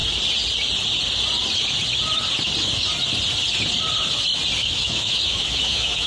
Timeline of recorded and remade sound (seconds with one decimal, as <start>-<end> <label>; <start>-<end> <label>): 0.0-4.6 recorded; 4.6-6.1 remade